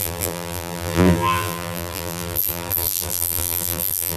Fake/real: fake